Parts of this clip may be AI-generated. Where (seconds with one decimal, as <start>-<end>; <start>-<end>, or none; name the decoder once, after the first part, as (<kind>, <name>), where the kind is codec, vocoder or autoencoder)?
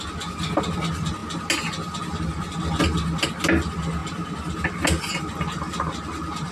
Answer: none